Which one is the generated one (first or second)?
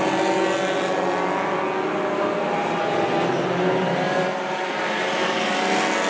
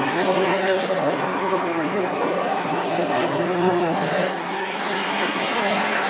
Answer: second